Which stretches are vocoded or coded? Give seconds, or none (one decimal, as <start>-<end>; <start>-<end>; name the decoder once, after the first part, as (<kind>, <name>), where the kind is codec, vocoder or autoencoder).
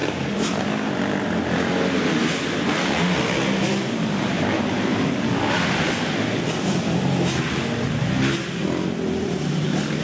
none